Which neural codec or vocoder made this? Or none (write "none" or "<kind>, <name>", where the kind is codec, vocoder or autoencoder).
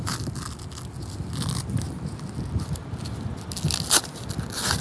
none